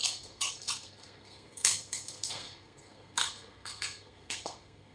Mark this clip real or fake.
fake